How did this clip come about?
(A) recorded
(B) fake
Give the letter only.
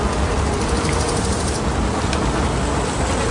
A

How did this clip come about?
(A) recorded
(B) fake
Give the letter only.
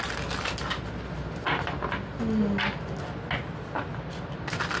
A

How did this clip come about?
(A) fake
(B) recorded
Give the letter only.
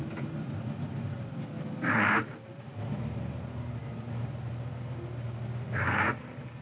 B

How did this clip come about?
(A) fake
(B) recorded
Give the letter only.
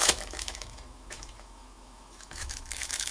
A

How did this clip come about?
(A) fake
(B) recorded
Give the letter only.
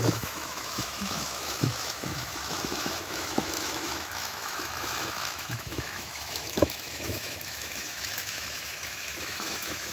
A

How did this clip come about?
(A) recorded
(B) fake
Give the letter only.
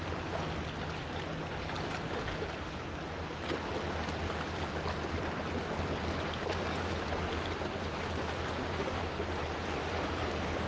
A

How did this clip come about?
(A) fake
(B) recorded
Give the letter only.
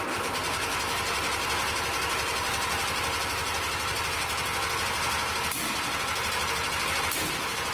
B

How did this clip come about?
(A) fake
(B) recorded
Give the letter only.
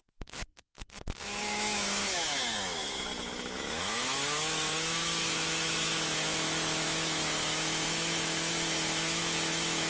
A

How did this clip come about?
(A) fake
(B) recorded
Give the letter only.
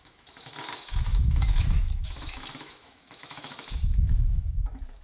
A